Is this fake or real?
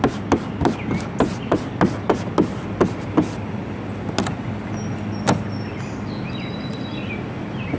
real